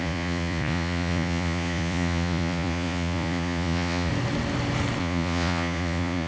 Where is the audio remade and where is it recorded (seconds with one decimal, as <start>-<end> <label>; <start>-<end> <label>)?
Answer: 0.0-4.1 remade; 4.1-5.0 recorded; 5.0-6.3 remade